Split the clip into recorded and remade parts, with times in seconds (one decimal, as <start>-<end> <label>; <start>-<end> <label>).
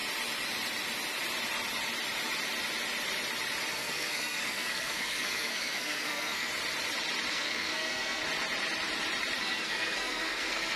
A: 0.0-3.7 recorded; 3.7-6.5 remade; 6.5-7.3 recorded; 7.3-8.2 remade; 8.2-9.4 recorded; 9.4-10.8 remade